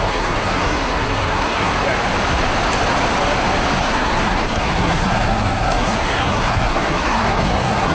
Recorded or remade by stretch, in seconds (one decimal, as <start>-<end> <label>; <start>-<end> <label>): 0.0-1.7 remade; 1.7-3.8 recorded; 3.8-7.9 remade

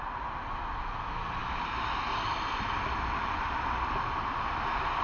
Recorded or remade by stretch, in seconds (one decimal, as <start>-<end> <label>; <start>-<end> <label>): 0.0-5.0 recorded

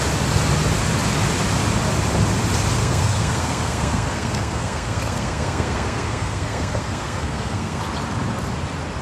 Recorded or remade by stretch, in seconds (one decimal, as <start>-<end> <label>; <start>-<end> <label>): 0.0-2.8 recorded; 2.8-7.8 remade; 7.8-9.0 recorded